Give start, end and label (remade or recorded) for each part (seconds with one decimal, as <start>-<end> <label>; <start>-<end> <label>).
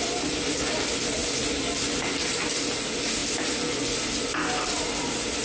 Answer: 0.0-5.4 recorded